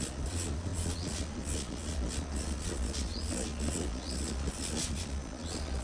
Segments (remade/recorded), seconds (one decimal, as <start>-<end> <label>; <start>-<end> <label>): 0.0-5.8 remade